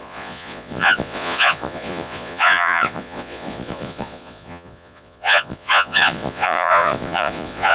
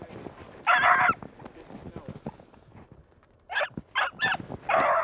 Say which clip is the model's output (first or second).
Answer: first